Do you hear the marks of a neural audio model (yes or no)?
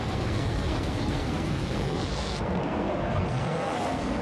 yes